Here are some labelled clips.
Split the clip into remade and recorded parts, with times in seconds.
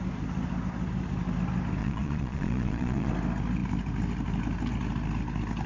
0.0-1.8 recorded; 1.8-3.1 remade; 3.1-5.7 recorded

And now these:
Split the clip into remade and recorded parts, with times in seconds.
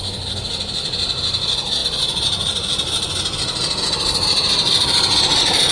0.0-5.7 recorded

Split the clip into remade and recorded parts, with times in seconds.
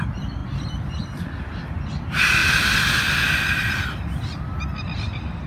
0.0-5.5 recorded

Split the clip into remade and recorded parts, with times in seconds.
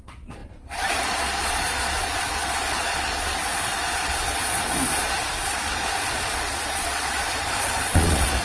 0.0-8.4 remade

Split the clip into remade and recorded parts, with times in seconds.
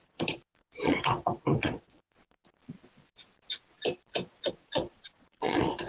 0.0-2.6 remade; 2.6-4.5 recorded; 4.5-5.9 remade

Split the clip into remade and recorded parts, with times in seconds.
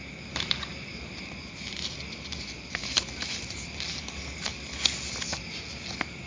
0.0-6.3 recorded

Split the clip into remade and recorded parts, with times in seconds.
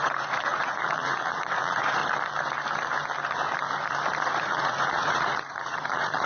0.0-2.0 remade; 2.0-4.2 recorded; 4.2-6.3 remade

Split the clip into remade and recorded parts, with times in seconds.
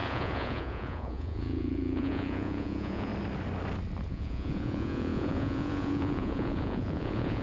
0.0-3.1 remade; 3.1-4.1 recorded; 4.1-7.4 remade